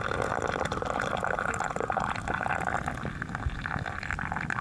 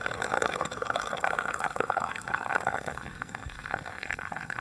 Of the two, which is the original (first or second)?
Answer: first